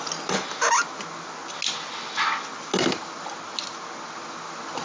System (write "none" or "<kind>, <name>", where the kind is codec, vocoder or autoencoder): none